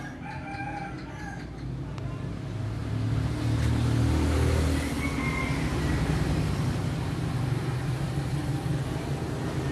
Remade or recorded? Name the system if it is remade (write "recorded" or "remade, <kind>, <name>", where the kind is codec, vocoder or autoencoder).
recorded